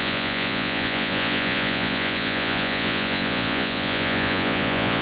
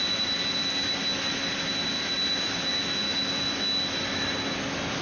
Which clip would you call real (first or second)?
second